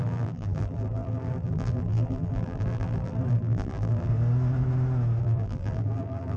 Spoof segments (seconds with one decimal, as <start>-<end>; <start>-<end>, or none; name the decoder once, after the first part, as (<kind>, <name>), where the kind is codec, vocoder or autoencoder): 0.0-4.1 (vocoder, BigVGAN v2); 5.2-6.4